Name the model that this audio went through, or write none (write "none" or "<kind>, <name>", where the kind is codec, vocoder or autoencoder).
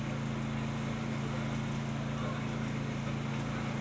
none